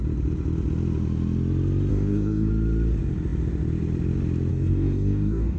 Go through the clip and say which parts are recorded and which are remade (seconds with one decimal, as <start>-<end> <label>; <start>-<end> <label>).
0.0-1.9 recorded; 1.9-2.5 remade; 2.5-4.5 recorded; 4.5-5.6 remade